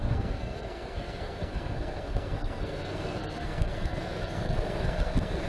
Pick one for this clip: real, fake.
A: fake